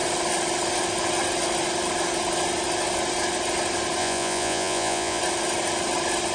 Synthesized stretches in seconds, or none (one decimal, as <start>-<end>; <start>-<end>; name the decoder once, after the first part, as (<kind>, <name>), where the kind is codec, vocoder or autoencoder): 4.0-5.2 (vocoder, Vocos)